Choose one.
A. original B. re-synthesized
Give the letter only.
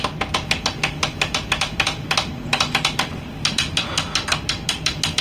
A